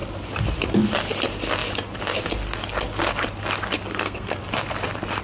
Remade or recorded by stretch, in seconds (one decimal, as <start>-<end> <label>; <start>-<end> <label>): 0.0-3.9 recorded; 3.9-4.4 remade; 4.4-5.2 recorded